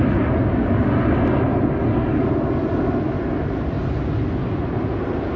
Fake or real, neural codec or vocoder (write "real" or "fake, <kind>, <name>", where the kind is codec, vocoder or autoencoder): real